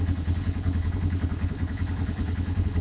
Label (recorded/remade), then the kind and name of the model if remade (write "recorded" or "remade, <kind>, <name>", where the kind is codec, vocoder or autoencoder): remade, codec, HILCodec